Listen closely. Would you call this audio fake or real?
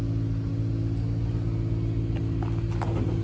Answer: real